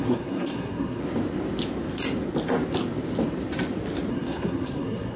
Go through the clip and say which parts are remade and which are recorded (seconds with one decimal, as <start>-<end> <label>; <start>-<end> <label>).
0.0-1.0 remade; 1.0-4.1 recorded; 4.1-5.2 remade